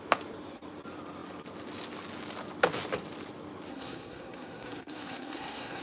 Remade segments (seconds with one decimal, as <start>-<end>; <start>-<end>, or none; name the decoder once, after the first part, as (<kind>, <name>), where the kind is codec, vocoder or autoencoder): 3.7-5.8 (codec, SNAC)

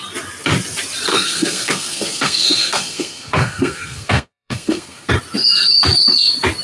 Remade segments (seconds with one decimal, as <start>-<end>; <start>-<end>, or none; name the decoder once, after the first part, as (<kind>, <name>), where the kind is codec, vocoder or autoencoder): 1.1-5.1 (codec, SNAC)

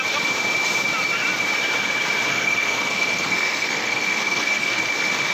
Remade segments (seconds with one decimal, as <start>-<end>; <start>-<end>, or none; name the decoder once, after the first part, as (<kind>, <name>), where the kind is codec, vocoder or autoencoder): 2.3-4.8 (codec, SNAC)

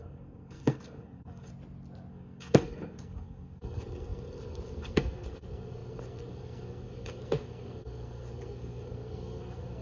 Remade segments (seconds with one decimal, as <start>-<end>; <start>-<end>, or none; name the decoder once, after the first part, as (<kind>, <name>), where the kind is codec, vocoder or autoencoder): 0.0-1.5 (codec, SNAC); 2.1-9.8

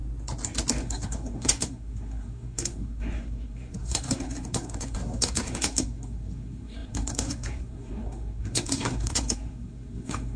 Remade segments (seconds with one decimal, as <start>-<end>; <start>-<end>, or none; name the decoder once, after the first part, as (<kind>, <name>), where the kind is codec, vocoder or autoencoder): 0.8-10.4 (codec, SNAC)

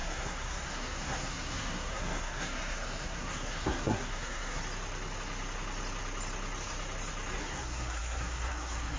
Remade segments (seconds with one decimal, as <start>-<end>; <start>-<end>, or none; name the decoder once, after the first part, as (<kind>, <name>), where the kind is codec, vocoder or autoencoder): 0.0-4.6 (codec, SNAC); 7.4-9.0

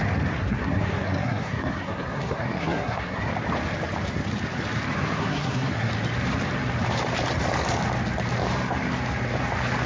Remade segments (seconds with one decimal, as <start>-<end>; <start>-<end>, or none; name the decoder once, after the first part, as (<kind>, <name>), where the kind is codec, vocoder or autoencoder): 0.4-3.3 (codec, SNAC); 5.2-5.9